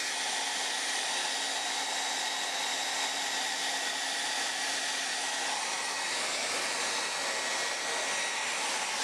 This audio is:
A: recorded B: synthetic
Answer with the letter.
A